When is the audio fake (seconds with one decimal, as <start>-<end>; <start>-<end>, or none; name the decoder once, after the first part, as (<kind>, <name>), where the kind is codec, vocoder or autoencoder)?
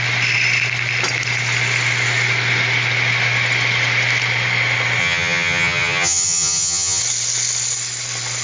5.0-7.0 (vocoder, HiFi-GAN)